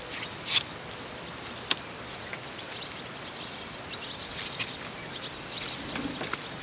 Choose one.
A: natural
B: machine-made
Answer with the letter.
A